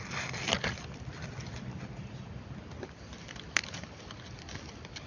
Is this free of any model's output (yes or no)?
yes